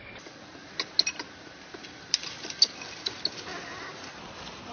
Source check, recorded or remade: recorded